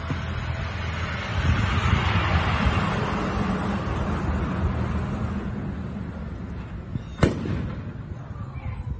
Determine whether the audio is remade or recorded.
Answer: recorded